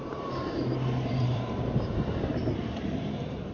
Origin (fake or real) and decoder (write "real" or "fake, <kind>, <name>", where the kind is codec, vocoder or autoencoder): fake, vocoder, BigVGAN v2